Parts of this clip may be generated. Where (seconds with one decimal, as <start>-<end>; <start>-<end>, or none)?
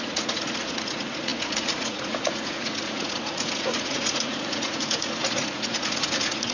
0.0-6.5